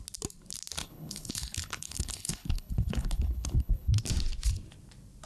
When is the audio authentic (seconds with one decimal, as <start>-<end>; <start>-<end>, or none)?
0.0-0.8; 4.0-5.3